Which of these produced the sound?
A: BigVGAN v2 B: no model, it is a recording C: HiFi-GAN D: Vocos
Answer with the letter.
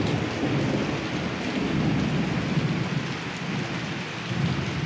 B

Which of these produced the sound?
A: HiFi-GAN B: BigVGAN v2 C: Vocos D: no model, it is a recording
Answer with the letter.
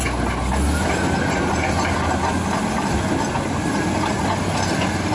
D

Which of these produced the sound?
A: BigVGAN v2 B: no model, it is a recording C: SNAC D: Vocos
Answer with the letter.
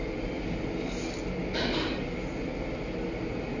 B